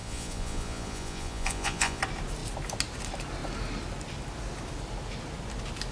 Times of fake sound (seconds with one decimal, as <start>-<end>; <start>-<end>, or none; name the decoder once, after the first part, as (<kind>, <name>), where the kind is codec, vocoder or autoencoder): 0.0-2.0 (vocoder, Vocos)